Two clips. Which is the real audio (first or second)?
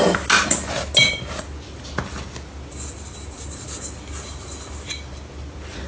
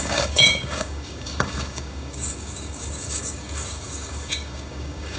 first